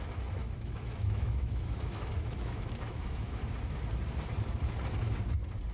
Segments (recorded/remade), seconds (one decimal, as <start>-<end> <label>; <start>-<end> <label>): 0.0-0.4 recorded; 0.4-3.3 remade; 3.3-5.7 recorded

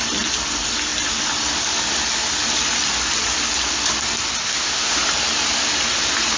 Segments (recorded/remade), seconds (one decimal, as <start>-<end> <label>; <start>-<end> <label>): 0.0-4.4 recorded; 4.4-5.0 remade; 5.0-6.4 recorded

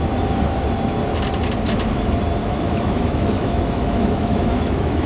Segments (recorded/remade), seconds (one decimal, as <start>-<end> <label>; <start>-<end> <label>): 0.0-2.4 recorded; 2.4-5.1 remade

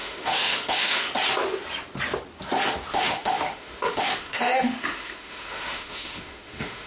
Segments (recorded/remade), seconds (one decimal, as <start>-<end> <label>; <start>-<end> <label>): 0.0-1.1 remade; 1.1-2.9 recorded; 2.9-6.9 remade

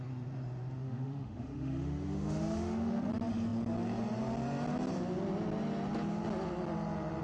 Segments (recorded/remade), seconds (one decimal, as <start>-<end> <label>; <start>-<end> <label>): 0.0-0.8 recorded; 0.8-3.1 remade; 3.1-7.2 recorded

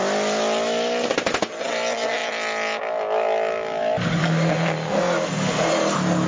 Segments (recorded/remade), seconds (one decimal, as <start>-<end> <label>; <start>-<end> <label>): 0.0-6.3 recorded

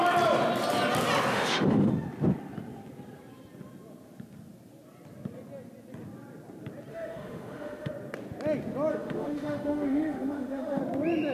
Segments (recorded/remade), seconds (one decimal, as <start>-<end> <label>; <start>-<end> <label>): 0.0-1.3 recorded; 1.3-1.9 remade; 1.9-6.9 recorded; 6.9-7.9 remade; 7.9-8.9 recorded; 8.9-10.8 remade; 10.8-11.3 recorded